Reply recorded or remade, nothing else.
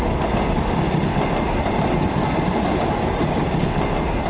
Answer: recorded